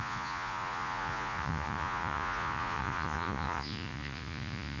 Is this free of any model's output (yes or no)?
no